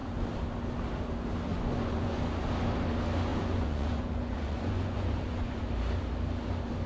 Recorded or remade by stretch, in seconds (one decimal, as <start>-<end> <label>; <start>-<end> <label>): 0.0-1.5 recorded; 1.5-2.2 remade; 2.2-3.3 recorded; 3.3-5.6 remade; 5.6-6.9 recorded